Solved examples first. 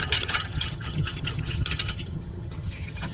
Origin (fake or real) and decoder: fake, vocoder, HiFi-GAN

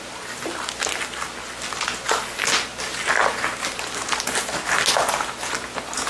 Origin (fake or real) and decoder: real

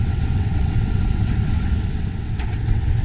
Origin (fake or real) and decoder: fake, vocoder, WaveNeXt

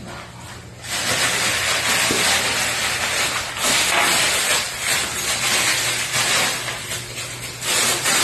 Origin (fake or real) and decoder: real